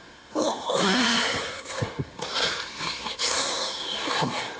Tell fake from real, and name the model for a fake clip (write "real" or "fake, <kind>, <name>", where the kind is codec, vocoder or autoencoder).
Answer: fake, codec, SNAC